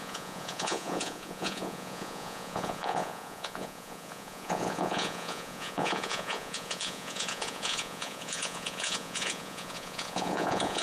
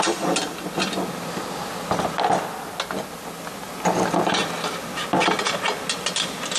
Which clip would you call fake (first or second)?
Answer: first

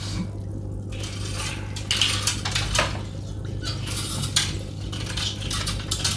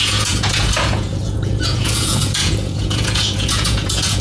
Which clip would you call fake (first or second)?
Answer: second